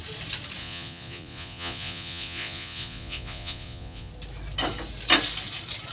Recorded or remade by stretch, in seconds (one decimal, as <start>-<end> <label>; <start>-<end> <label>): 0.0-0.6 recorded; 0.6-4.1 remade; 4.1-5.9 recorded